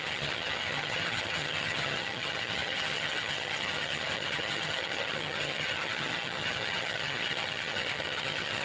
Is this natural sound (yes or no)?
no